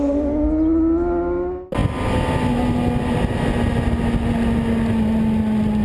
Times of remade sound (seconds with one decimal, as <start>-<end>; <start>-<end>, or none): none

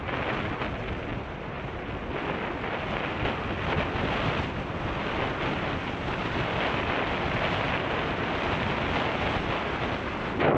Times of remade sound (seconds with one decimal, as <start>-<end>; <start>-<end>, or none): 1.1-1.9

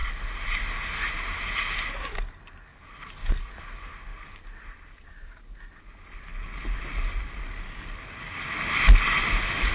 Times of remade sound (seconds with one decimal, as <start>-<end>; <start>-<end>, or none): 2.7-3.6; 4.1-5.4

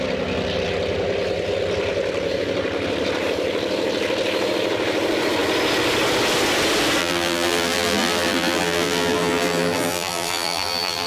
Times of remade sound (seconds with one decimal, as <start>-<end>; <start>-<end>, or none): 7.0-11.1

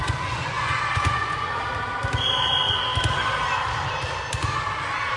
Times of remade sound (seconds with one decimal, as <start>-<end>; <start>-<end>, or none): 0.0-1.6

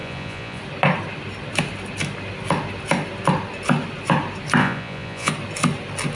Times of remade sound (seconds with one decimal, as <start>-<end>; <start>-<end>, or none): 0.0-0.6; 4.6-5.3